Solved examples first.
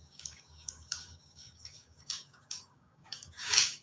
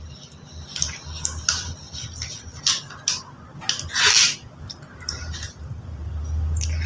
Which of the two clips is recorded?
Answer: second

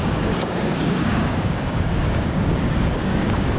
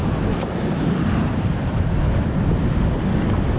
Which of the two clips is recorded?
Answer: second